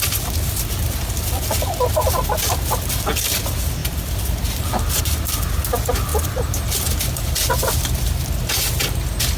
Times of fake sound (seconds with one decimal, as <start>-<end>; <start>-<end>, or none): none